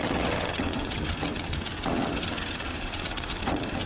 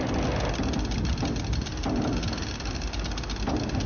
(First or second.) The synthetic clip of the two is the first